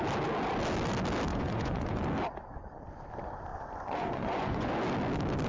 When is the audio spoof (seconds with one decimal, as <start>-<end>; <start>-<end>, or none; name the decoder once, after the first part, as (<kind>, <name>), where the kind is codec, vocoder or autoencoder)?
1.3-2.0 (vocoder, Vocos); 3.5-4.7